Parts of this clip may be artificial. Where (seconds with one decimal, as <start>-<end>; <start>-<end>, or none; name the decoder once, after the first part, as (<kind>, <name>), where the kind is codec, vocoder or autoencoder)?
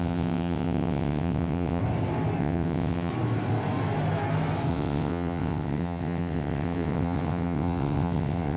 0.0-1.8 (vocoder, WaveNeXt); 2.4-3.1; 4.7-8.6